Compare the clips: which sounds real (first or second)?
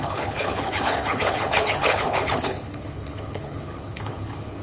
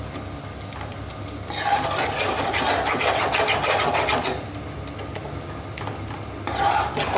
second